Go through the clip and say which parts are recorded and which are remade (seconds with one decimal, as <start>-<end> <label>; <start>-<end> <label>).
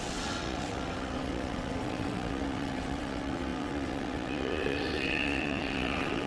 0.0-6.3 remade